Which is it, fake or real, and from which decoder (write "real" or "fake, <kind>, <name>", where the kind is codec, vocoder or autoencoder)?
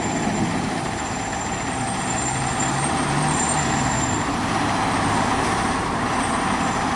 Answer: fake, vocoder, BigVGAN v2